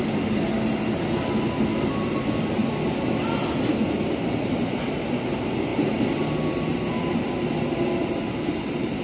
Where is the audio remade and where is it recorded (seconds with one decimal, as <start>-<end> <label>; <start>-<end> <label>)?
0.0-9.0 recorded

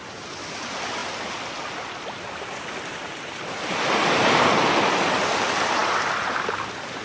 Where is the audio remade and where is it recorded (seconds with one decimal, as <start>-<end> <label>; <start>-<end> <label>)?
0.0-7.0 recorded

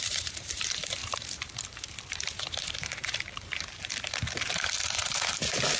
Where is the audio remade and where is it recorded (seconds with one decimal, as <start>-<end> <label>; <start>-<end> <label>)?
0.0-5.8 remade

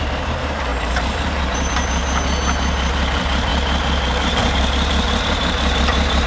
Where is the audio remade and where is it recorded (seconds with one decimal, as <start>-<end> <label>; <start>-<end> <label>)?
0.0-2.0 remade; 2.0-2.9 recorded; 2.9-3.5 remade; 3.5-4.2 recorded; 4.2-6.3 remade